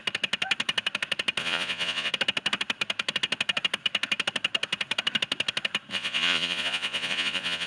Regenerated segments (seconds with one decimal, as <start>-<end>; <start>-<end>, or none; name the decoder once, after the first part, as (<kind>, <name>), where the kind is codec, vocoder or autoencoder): 1.4-2.1 (vocoder, Vocos); 5.9-7.7